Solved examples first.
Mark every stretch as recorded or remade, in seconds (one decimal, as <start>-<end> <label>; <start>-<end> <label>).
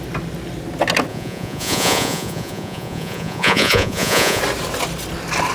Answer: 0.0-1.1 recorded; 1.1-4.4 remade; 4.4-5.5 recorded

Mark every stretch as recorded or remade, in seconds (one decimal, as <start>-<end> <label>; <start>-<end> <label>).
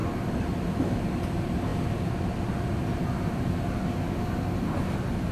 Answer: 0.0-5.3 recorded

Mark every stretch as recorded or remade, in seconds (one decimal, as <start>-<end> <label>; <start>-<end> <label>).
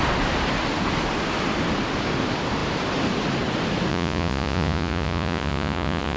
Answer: 0.0-3.9 recorded; 3.9-6.2 remade